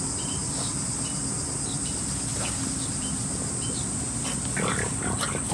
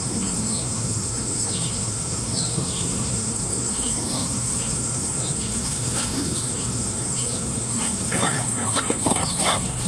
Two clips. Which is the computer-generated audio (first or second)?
second